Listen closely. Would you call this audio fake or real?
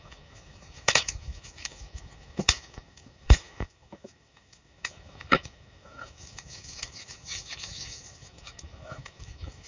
fake